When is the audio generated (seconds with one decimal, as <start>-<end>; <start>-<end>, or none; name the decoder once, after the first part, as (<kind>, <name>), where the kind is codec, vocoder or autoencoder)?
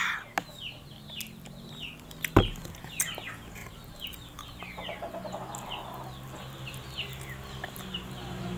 3.6-4.6 (vocoder, BigVGAN v2)